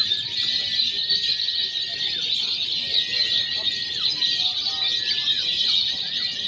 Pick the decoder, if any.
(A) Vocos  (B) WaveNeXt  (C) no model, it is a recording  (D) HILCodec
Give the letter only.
C